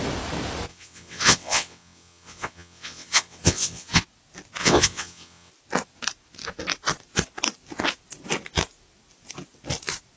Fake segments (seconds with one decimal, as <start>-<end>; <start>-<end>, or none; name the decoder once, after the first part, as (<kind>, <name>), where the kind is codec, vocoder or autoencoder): 0.7-4.0 (vocoder, WaveNeXt); 4.6-5.5